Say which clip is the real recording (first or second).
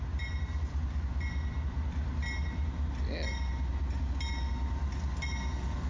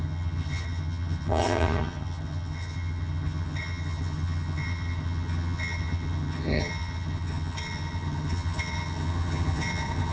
first